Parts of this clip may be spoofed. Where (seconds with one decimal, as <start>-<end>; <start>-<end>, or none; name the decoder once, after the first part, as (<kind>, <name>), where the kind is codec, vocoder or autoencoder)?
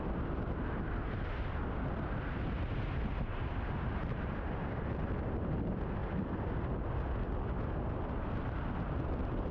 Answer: 3.3-5.1 (vocoder, BigVGAN v2)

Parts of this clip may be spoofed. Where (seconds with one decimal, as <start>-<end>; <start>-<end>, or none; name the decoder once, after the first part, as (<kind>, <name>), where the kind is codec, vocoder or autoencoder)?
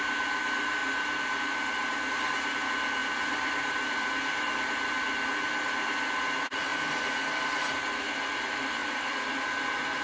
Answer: 3.0-4.1 (vocoder, BigVGAN v2); 8.8-9.3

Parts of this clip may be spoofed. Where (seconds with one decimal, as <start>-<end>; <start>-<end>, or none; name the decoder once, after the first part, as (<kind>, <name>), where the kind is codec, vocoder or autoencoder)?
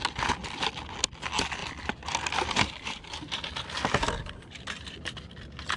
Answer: 1.6-5.1 (vocoder, BigVGAN v2)